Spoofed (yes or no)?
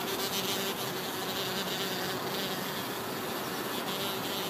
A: no